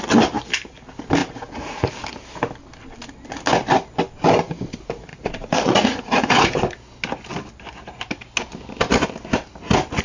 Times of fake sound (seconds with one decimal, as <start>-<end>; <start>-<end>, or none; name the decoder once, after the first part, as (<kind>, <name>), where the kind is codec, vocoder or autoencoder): 1.2-1.9 (vocoder, Vocos); 5.1-6.5